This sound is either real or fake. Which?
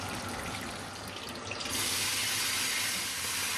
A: real